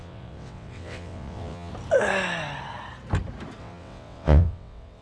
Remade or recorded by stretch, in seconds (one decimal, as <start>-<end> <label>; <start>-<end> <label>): 0.0-1.7 remade; 1.7-3.6 recorded; 3.6-5.0 remade